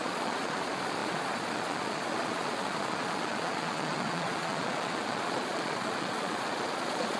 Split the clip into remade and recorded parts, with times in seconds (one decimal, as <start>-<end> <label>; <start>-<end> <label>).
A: 0.0-7.2 remade